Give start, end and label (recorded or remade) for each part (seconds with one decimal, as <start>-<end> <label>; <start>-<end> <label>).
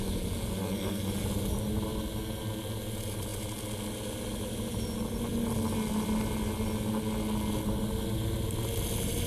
0.0-0.6 recorded; 0.6-1.1 remade; 1.1-9.3 recorded